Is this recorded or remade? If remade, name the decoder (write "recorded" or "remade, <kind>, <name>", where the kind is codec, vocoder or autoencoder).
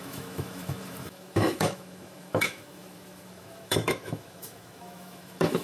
remade, autoencoder, DAC-VAE